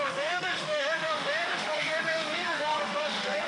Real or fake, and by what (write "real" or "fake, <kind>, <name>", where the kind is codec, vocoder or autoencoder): fake, autoencoder, DAC-VAE